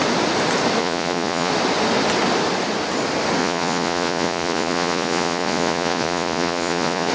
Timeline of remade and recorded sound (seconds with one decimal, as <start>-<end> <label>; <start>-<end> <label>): 0.0-0.8 recorded; 0.8-1.5 remade; 1.5-3.4 recorded; 3.4-7.1 remade